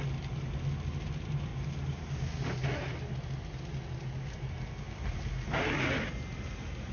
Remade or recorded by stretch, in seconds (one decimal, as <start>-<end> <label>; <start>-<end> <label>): 0.0-6.9 recorded